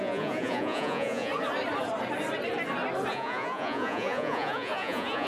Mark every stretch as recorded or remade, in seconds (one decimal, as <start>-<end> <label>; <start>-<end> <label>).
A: 0.0-1.3 remade; 1.3-3.1 recorded; 3.1-5.3 remade